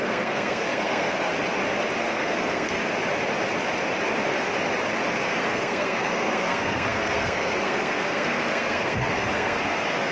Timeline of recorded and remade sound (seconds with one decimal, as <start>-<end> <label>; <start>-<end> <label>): 0.0-1.3 remade; 1.3-2.0 recorded; 2.0-2.8 remade; 2.8-5.1 recorded; 5.1-10.1 remade